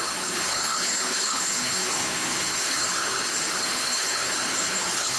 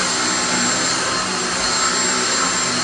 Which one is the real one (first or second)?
second